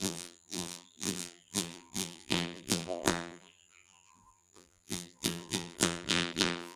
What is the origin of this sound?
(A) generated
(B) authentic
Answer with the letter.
A